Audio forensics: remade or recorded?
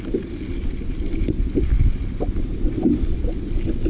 recorded